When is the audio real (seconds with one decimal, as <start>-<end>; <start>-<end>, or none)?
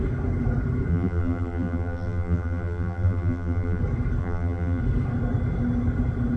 0.0-0.9; 3.8-4.2; 4.8-6.4